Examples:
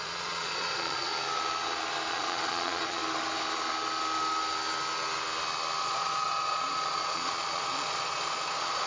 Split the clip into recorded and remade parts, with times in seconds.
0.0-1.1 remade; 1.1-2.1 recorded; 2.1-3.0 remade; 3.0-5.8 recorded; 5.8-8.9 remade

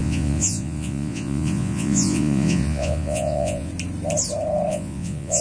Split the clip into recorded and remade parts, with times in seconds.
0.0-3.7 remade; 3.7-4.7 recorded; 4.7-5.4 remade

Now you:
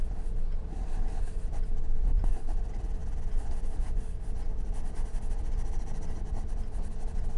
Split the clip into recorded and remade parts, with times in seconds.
0.0-7.4 recorded

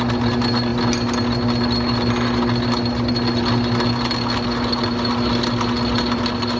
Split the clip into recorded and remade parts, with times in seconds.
0.0-6.6 recorded